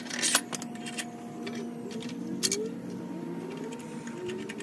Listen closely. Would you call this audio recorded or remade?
recorded